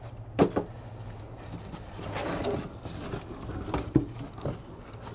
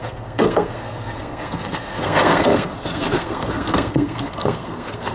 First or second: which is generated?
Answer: second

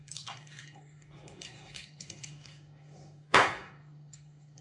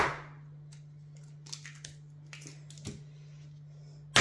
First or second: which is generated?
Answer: first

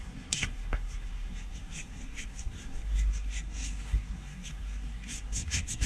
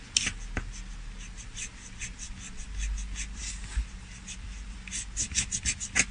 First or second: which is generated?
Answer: first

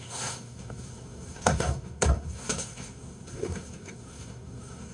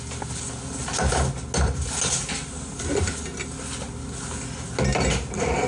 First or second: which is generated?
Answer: first